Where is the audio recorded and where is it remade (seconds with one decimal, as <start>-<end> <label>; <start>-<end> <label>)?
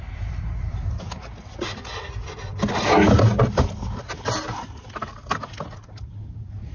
0.0-6.7 recorded